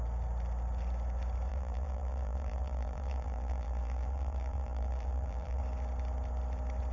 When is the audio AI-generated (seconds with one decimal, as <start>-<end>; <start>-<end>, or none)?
1.5-5.6